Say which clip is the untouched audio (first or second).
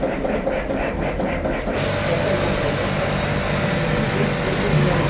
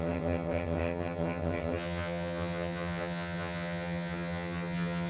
first